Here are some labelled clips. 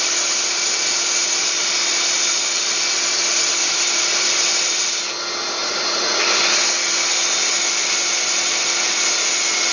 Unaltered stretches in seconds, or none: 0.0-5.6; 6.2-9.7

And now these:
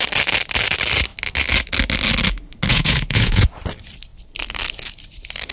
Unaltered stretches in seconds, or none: 0.0-2.7; 3.6-5.5

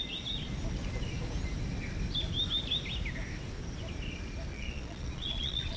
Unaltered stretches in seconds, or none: 0.0-4.5

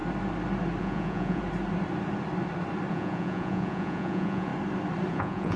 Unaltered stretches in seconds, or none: 0.0-0.8; 1.4-2.9; 4.5-5.1

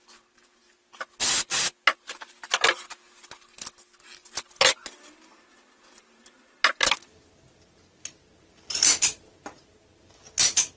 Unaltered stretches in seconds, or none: 0.0-10.8

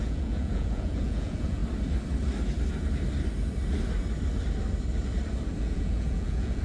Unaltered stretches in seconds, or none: 1.6-5.6

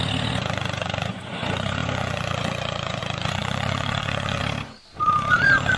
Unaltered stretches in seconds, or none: 4.4-5.0